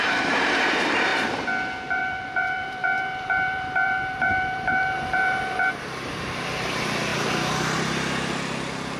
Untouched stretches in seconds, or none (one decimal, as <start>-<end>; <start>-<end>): 1.1-1.9; 7.1-9.0